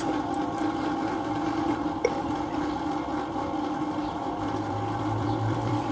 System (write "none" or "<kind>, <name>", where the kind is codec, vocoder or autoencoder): vocoder, BigVGAN v2